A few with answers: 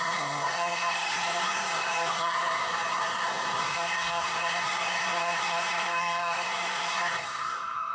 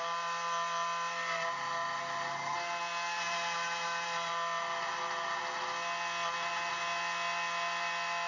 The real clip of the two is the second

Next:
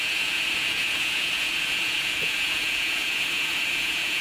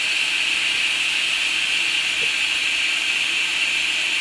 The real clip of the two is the second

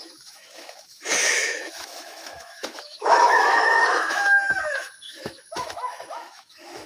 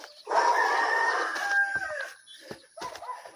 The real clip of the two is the second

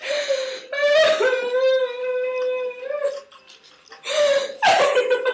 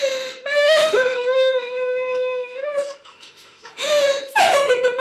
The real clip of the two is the first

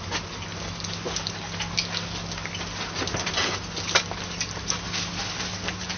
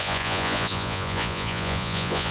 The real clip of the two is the first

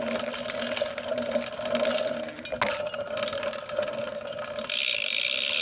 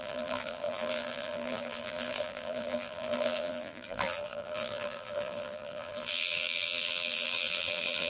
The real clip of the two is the first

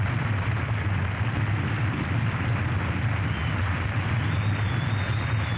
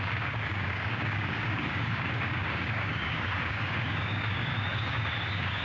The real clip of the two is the first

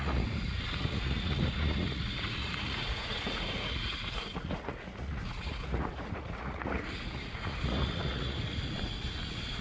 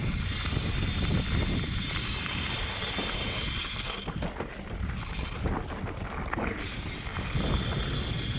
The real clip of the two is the second